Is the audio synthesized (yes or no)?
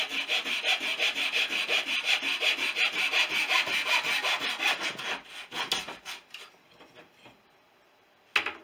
no